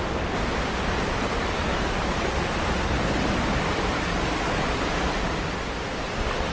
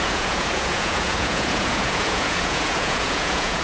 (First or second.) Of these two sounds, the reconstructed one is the second